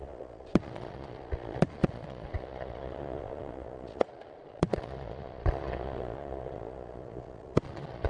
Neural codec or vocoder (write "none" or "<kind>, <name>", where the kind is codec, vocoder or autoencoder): vocoder, Vocos